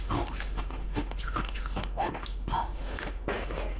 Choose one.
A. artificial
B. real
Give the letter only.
A